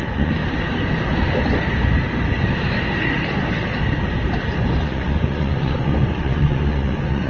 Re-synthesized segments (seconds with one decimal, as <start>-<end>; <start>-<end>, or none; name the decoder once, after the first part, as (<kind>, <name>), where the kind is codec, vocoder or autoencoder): 0.0-0.4 (vocoder, Vocos); 4.8-7.3